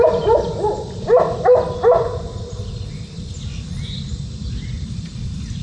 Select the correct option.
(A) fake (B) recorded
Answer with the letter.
B